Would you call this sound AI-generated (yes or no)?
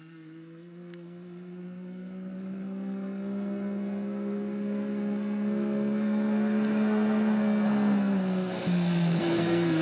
yes